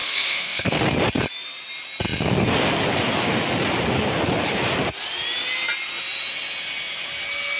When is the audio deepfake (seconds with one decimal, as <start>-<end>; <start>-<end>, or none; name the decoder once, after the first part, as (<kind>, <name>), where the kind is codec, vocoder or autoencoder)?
0.0-0.8 (codec, SNAC)